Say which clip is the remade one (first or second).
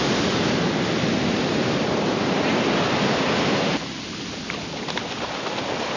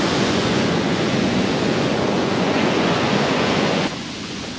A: second